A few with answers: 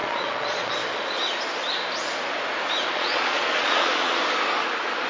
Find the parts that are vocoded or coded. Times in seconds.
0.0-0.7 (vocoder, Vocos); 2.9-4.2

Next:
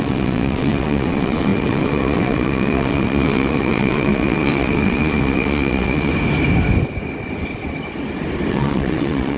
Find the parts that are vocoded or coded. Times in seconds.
0.0-6.1 (vocoder, WaveNeXt); 8.5-9.4

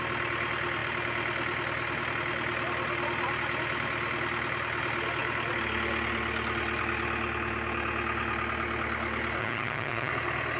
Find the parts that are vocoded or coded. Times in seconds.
9.4-10.1 (vocoder, HiFi-GAN)